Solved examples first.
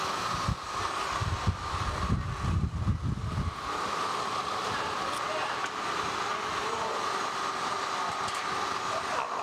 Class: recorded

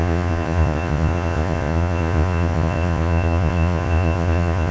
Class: remade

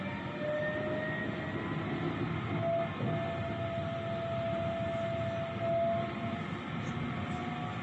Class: recorded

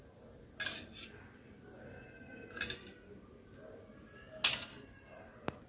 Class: recorded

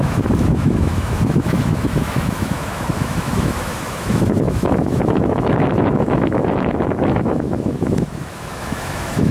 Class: remade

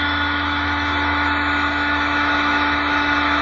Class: remade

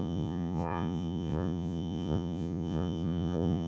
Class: remade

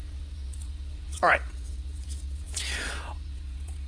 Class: remade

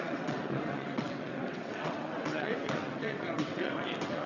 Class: remade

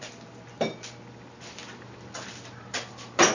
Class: remade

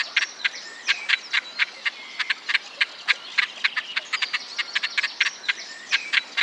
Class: recorded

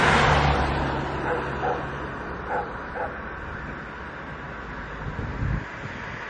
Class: recorded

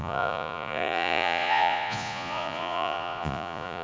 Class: remade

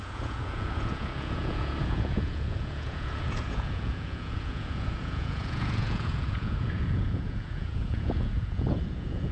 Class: remade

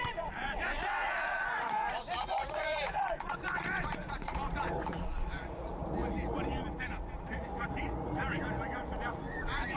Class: remade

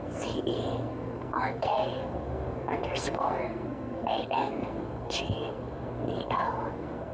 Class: remade